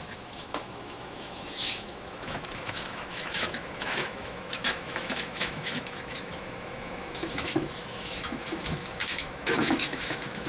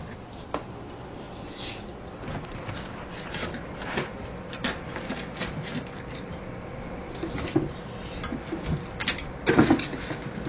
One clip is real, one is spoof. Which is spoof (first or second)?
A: first